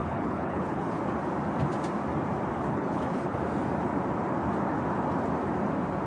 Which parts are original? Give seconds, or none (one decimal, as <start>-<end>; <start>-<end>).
1.0-2.5; 3.4-6.1